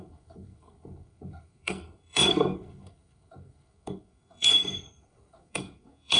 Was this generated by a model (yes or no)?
yes